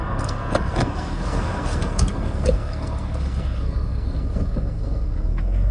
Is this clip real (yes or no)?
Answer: no